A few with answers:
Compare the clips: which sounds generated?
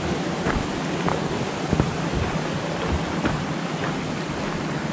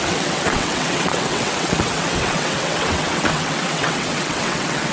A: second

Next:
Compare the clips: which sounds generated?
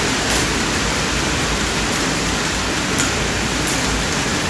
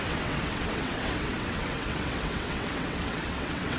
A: second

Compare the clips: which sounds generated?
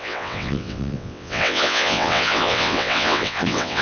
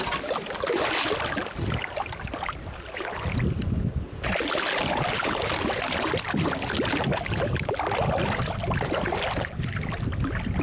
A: first